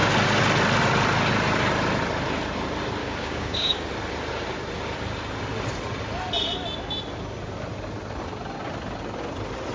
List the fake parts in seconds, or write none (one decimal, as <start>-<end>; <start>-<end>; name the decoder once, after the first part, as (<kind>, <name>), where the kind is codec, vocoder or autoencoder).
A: 3.0-3.9 (codec, DAC)